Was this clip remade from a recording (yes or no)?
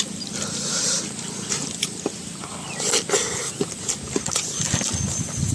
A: no